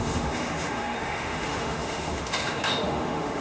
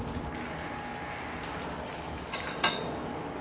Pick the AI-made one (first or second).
first